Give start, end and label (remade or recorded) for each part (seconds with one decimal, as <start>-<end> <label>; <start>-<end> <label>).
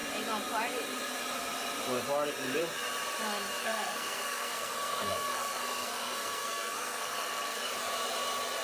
0.0-3.6 recorded; 3.6-7.7 remade; 7.7-8.6 recorded